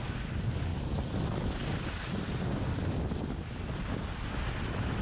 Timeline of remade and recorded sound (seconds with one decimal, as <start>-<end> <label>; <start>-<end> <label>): 0.0-5.0 recorded